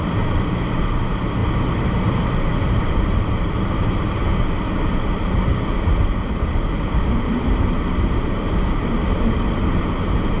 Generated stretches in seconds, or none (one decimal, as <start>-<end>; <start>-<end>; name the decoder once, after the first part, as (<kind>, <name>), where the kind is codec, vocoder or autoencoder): 0.0-4.2 (vocoder, BigVGAN v2); 5.9-10.4